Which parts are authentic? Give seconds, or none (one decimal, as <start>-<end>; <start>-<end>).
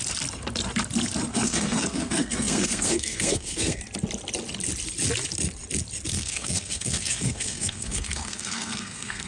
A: 0.0-1.3; 3.8-6.1